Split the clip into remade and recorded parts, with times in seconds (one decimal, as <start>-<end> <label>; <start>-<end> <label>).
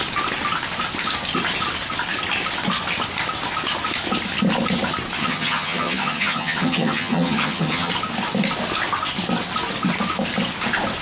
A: 0.0-5.2 recorded; 5.2-7.9 remade; 7.9-11.0 recorded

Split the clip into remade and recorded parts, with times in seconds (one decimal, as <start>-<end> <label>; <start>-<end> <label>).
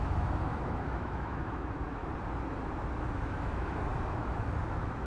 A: 0.0-2.0 remade; 2.0-3.0 recorded; 3.0-5.1 remade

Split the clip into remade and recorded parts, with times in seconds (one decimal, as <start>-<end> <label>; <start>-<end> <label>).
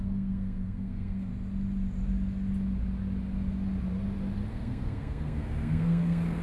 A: 0.0-1.3 remade; 1.3-4.5 recorded; 4.5-6.4 remade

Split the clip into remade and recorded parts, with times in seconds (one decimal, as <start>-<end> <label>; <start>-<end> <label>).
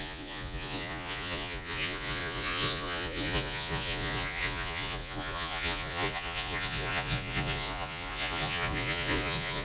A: 0.0-9.6 remade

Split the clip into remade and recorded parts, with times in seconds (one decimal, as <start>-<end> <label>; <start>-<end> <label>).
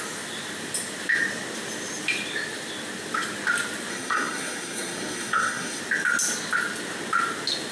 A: 0.0-3.9 recorded; 3.9-5.8 remade; 5.8-7.7 recorded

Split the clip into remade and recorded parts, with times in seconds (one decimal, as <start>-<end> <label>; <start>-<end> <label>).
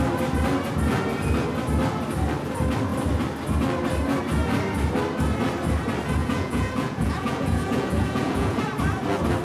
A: 0.0-6.2 recorded; 6.2-8.6 remade; 8.6-9.4 recorded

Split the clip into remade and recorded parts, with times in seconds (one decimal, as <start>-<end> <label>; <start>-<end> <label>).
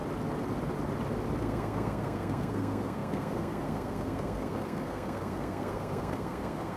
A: 0.0-1.4 recorded; 1.4-6.8 remade